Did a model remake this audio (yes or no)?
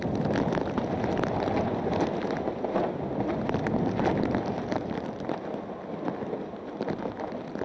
no